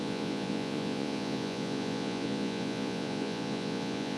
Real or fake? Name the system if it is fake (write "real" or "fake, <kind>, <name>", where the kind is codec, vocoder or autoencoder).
fake, vocoder, Vocos